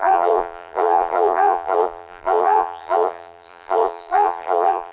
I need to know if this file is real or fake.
fake